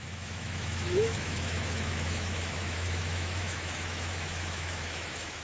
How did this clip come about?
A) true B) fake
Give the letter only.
B